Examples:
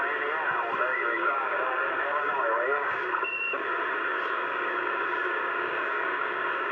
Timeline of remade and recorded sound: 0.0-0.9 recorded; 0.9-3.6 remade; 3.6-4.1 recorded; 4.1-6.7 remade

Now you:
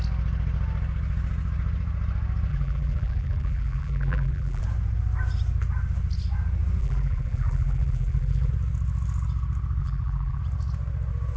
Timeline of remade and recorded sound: 0.0-2.5 recorded; 2.5-4.6 remade; 4.6-6.8 recorded; 6.8-8.5 remade; 8.5-9.8 recorded; 9.8-10.4 remade; 10.4-11.4 recorded